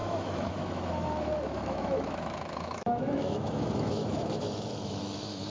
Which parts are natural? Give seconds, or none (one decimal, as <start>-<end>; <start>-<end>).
none